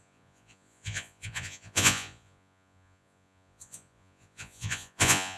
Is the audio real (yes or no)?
no